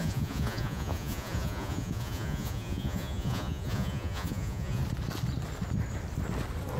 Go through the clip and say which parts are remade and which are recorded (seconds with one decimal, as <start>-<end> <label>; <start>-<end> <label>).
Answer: 0.0-4.8 remade; 4.8-6.8 recorded